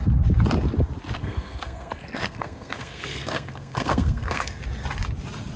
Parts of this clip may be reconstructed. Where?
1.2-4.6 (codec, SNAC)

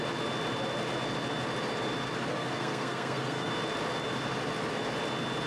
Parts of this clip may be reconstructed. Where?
2.3-3.5 (codec, SNAC)

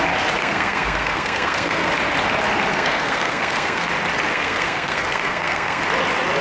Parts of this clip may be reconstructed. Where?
0.4-1.9 (codec, SNAC); 2.7-3.9; 4.3-5.8